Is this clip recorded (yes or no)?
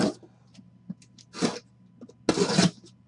yes